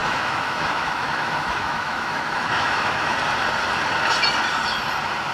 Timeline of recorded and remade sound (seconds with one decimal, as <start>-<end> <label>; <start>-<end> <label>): 0.0-3.1 remade; 3.1-5.3 recorded